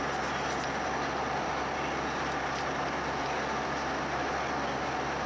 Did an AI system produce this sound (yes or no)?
no